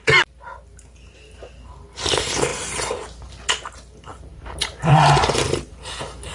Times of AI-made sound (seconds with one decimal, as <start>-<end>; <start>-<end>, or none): none